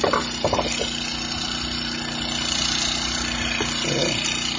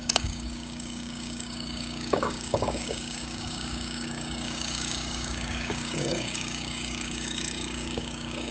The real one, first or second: first